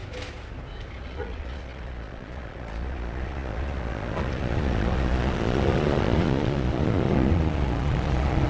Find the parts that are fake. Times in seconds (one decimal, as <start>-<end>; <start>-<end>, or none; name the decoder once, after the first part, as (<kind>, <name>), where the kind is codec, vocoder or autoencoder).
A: 1.0-8.5 (vocoder, Vocos)